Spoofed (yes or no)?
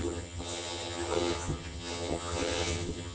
yes